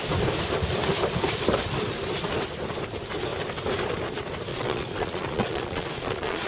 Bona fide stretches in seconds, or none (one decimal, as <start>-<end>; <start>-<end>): 0.0-4.5